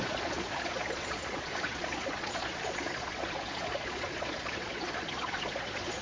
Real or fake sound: fake